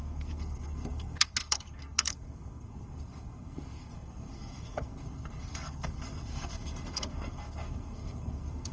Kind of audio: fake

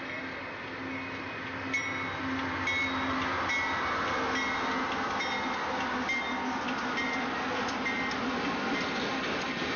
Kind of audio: real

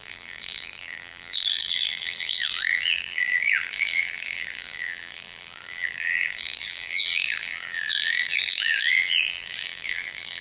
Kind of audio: fake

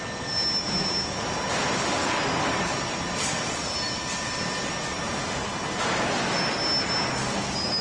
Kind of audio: real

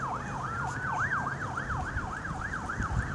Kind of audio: real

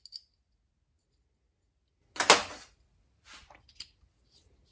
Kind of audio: real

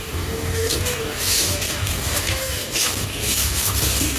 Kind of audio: fake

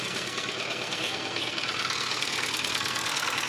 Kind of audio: fake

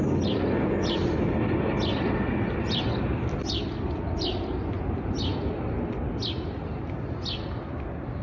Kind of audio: real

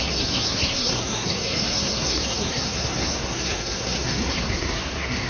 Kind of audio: fake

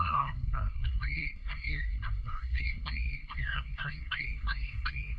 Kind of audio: fake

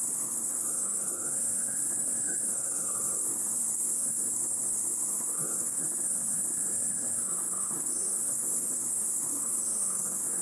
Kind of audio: fake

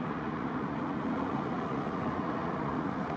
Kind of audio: fake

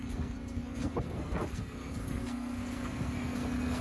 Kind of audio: fake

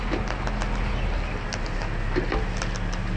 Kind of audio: real